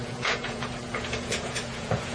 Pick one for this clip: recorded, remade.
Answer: remade